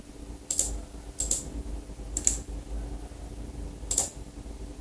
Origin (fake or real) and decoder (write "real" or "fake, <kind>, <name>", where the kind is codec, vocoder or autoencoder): real